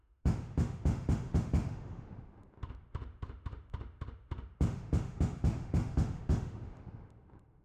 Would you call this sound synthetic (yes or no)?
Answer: yes